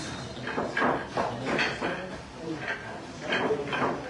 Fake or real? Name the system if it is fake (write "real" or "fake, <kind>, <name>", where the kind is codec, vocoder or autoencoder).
real